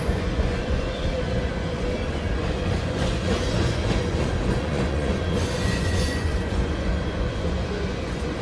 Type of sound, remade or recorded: remade